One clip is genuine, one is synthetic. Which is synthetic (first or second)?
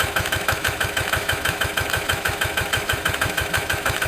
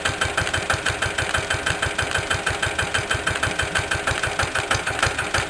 first